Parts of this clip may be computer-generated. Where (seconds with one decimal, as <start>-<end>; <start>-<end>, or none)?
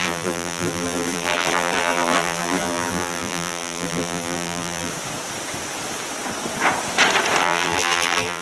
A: 0.0-4.9; 7.4-8.4